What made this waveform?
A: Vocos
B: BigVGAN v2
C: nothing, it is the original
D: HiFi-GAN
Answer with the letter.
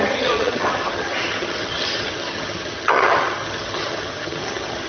D